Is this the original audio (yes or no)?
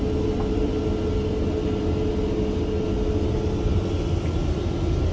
yes